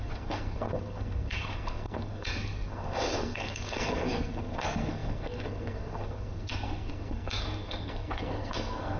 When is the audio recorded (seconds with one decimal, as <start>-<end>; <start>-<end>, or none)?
none